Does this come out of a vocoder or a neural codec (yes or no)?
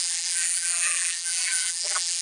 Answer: yes